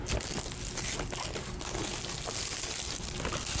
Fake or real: real